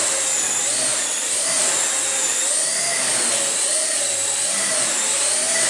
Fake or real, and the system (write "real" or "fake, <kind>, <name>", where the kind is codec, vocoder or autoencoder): real